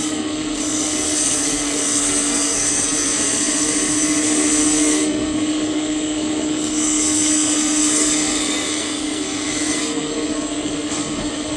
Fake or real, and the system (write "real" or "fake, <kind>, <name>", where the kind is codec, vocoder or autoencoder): fake, codec, SNAC